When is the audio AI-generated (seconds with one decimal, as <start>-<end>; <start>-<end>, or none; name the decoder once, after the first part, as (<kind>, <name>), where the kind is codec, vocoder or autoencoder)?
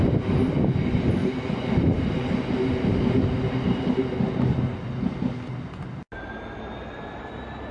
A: 1.2-2.3 (vocoder, BigVGAN v2)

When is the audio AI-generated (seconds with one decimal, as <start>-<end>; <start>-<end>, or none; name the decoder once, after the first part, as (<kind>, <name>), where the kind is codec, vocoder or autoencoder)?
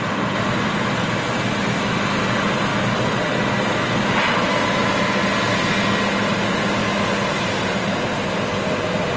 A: none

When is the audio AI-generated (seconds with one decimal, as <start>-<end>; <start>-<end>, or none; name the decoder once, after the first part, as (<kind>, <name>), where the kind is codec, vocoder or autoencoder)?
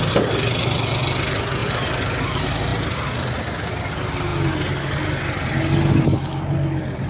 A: 1.6-2.2 (vocoder, BigVGAN v2)